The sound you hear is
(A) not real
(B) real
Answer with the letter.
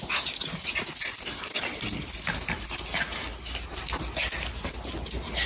B